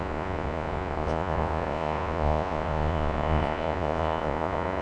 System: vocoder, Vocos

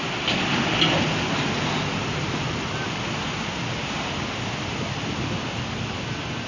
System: none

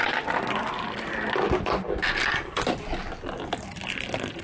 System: none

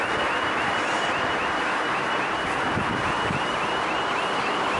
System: none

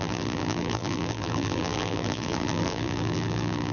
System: vocoder, BigVGAN v2